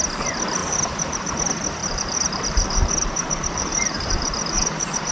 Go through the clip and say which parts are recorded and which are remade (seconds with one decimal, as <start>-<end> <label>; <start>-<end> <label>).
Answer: 0.0-0.6 recorded; 0.6-1.3 remade; 1.3-1.8 recorded; 1.8-5.1 remade